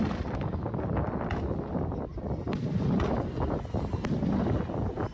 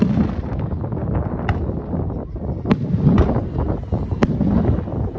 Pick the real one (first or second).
second